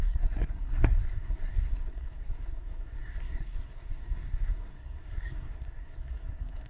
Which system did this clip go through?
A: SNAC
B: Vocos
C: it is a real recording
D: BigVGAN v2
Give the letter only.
A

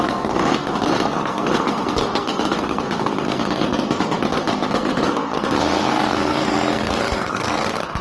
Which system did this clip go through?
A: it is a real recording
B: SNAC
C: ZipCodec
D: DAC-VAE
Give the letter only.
B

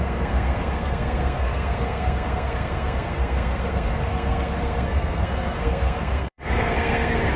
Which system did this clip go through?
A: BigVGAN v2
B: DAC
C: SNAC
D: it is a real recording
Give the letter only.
C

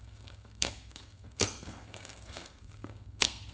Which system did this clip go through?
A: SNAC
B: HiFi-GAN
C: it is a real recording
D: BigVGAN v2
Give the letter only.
A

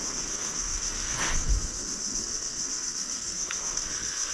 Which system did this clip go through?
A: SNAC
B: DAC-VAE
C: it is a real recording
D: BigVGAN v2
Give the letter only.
A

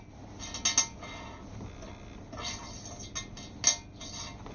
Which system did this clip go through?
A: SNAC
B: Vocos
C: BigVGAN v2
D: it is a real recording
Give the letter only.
D